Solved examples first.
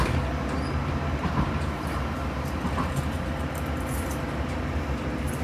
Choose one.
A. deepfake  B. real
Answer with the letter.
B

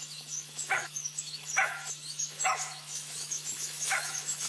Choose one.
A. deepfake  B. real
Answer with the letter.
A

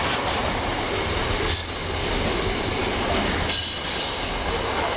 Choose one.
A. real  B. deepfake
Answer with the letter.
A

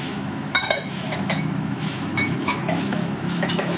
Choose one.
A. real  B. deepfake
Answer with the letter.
B